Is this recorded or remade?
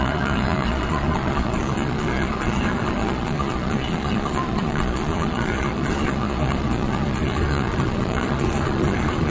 remade